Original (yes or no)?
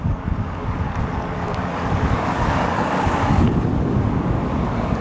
no